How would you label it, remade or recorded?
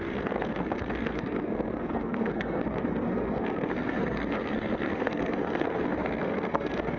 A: remade